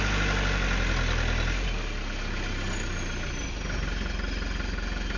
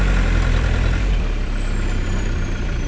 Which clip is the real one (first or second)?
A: first